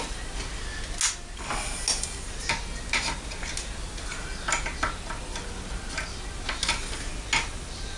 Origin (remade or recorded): recorded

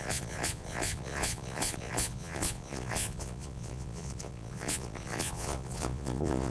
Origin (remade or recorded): remade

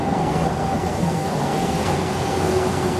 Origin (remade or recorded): remade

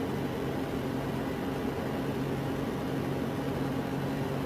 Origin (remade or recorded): recorded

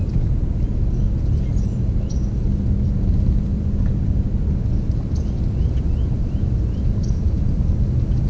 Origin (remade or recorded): recorded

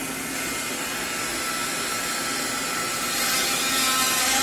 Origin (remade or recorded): recorded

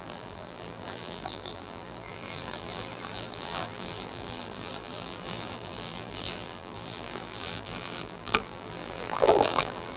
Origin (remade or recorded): remade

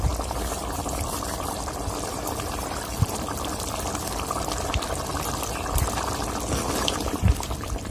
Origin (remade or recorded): remade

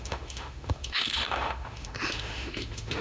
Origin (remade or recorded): remade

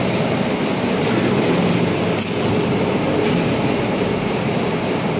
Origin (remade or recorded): recorded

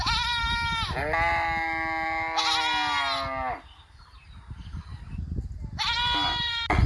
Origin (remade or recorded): recorded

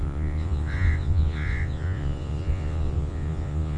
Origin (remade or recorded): remade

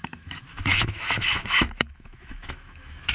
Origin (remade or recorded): remade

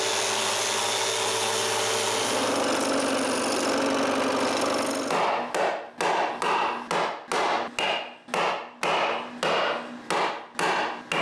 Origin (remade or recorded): recorded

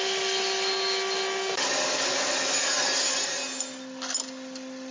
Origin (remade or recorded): recorded